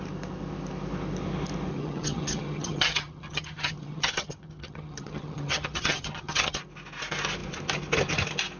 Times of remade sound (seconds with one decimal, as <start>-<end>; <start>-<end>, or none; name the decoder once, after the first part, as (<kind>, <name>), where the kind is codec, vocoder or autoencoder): 1.7-6.6 (vocoder, HiFi-GAN)